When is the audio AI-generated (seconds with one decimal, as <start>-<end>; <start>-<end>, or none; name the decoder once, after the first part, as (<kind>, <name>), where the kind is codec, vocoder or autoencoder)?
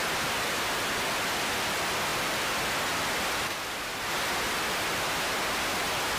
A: 0.0-0.8 (vocoder, BigVGAN v2); 2.1-5.8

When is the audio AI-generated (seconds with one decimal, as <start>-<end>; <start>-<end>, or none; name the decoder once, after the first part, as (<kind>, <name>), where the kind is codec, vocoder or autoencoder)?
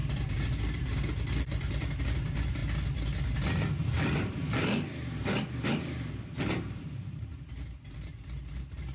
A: 0.0-2.6 (vocoder, BigVGAN v2); 6.8-7.3; 8.1-8.9